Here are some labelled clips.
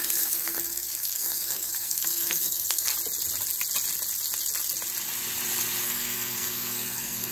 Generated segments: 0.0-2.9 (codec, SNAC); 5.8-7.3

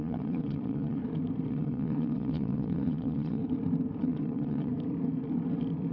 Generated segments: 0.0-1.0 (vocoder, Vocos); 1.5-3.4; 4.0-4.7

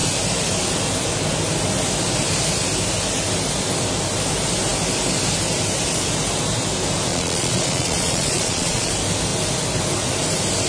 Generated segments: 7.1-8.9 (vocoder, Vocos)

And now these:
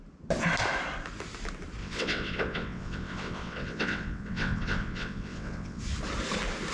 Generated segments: 1.8-5.8 (vocoder, WaveNeXt)